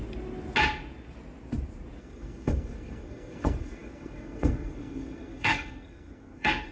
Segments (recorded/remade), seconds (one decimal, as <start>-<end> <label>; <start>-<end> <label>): 0.0-2.0 recorded; 2.0-6.7 remade